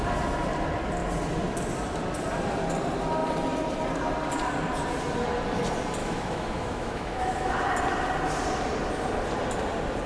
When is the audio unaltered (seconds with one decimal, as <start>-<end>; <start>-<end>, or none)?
0.0-6.0; 7.5-10.1